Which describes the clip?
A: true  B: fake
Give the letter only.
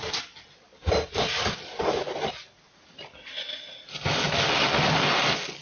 A